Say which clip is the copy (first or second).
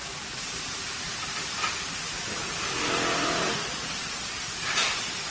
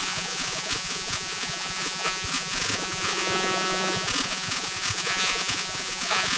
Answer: second